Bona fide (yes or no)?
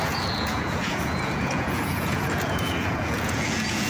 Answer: no